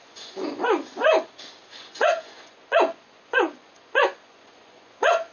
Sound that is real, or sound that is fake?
fake